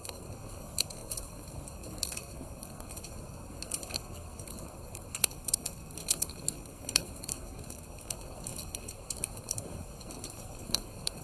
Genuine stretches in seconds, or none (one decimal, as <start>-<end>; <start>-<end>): none